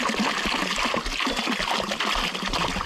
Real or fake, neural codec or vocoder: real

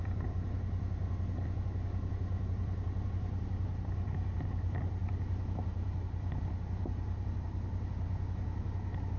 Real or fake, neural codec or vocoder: real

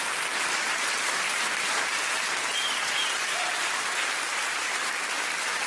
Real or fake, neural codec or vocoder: fake, vocoder, BigVGAN v2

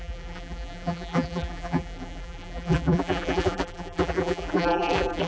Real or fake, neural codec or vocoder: fake, vocoder, BigVGAN v2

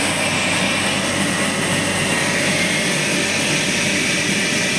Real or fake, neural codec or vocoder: real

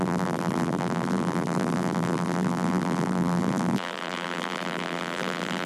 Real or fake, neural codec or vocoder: fake, vocoder, BigVGAN v2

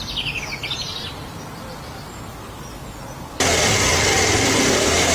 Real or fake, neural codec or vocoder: real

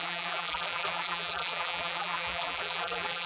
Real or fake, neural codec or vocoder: fake, vocoder, BigVGAN v2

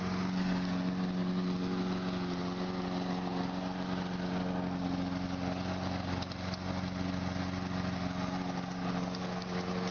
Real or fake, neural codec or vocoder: real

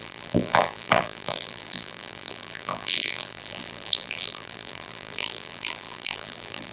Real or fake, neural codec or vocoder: fake, vocoder, BigVGAN v2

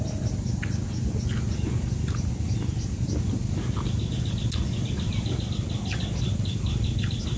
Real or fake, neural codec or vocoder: real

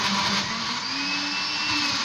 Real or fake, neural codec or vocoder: real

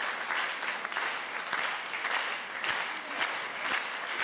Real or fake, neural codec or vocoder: real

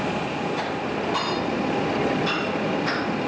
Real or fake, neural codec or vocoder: real